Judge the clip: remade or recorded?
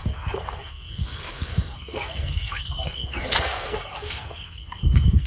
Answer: remade